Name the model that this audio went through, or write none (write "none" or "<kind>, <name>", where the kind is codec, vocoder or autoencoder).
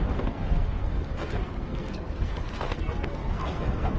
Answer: codec, SNAC